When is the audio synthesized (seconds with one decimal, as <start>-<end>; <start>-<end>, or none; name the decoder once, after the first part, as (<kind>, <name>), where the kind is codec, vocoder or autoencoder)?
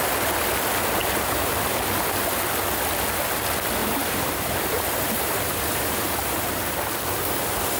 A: 1.0-1.5 (vocoder, BigVGAN v2); 3.8-6.7